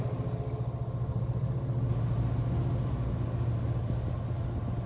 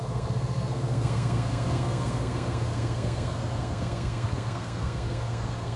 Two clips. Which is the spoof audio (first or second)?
second